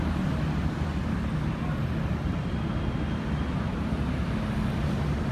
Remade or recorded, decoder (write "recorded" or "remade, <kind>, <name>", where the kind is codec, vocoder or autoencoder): recorded